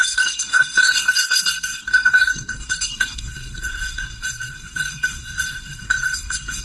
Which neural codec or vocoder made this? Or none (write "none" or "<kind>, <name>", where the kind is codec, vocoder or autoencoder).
codec, SNAC